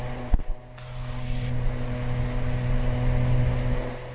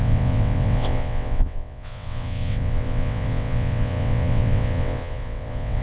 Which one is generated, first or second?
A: second